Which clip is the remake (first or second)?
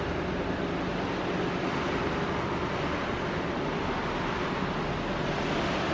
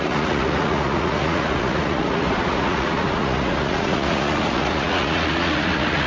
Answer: second